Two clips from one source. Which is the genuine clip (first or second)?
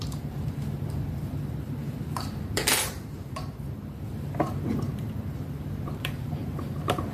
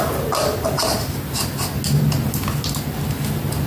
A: second